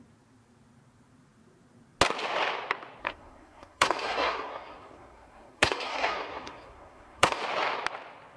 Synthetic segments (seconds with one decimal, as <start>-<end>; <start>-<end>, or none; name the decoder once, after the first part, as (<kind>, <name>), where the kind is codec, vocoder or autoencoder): 3.0-7.4 (codec, SNAC)